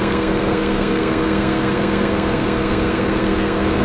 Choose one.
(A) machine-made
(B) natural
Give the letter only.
A